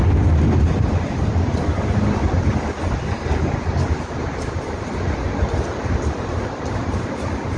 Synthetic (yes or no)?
no